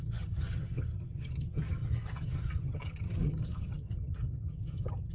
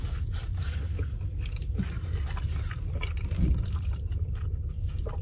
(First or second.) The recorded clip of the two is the second